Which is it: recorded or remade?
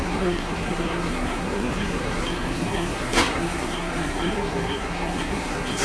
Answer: remade